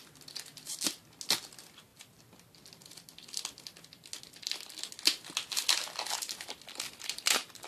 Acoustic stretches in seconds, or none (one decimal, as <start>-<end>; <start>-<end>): 0.0-7.7